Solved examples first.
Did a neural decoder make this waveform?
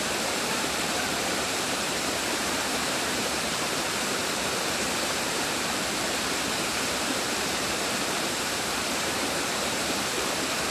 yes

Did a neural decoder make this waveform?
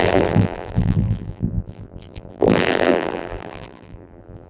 yes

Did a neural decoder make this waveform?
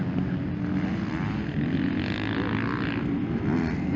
no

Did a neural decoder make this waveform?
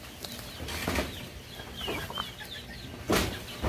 no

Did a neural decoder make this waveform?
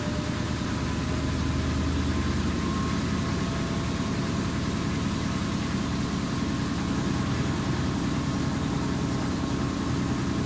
no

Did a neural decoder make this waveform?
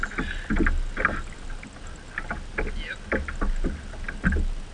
no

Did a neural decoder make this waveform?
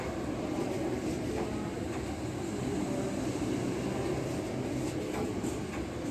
no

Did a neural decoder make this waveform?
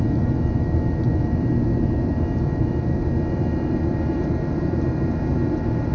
yes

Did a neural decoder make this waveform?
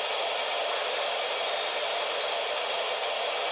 no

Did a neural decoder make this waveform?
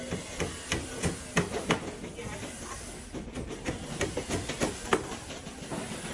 no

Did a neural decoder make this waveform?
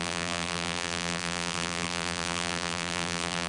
yes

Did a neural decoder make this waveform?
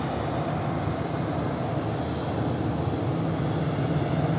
no